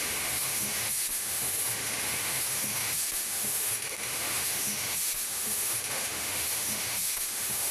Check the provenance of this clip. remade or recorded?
remade